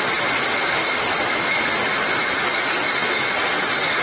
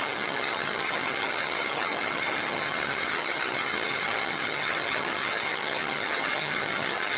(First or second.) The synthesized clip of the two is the second